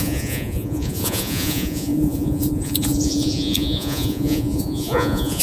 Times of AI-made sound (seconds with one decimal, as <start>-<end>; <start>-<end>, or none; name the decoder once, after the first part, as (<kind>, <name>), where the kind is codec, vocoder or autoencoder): 0.0-5.4 (vocoder, Vocos)